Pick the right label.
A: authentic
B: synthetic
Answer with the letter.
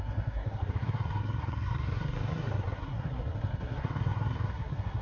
B